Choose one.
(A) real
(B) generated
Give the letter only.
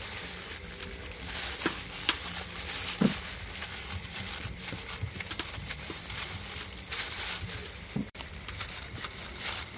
B